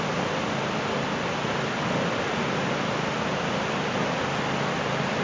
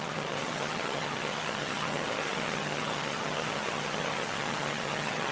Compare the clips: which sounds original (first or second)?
first